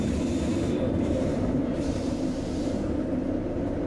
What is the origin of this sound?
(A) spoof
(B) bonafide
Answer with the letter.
A